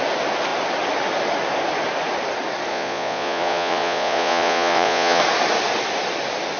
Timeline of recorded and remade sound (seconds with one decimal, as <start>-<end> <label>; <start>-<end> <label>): 0.0-2.7 recorded; 2.7-5.2 remade; 5.2-6.6 recorded